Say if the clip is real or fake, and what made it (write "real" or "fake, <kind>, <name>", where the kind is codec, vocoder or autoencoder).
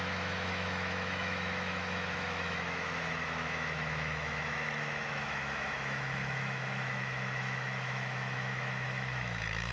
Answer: fake, autoencoder, DAC-VAE